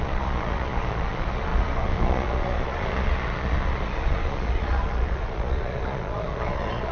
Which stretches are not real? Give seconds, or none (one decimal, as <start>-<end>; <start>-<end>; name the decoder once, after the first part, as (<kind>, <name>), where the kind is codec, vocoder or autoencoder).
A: 0.0-6.9 (vocoder, Vocos)